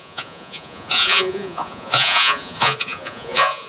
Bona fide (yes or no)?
no